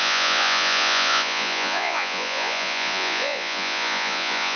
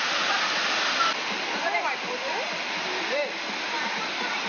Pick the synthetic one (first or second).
first